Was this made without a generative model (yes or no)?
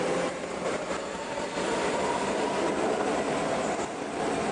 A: yes